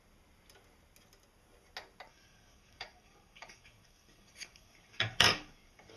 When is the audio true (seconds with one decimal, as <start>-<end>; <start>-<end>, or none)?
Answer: 0.0-2.1

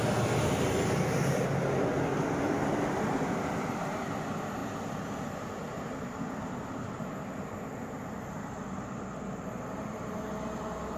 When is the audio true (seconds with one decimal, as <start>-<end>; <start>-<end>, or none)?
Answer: 0.0-11.0